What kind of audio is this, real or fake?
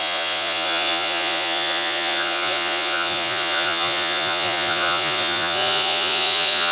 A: fake